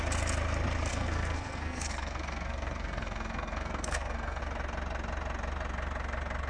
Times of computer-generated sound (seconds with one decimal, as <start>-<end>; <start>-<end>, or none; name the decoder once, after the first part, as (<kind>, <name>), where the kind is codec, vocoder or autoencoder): 0.9-4.4 (codec, SNAC)